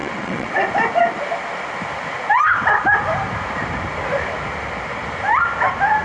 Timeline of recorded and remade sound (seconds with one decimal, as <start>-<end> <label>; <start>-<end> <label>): 0.0-0.5 remade; 0.5-6.0 recorded